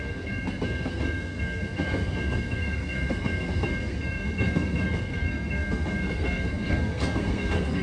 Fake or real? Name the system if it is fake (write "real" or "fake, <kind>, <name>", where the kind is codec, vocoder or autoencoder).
fake, codec, SNAC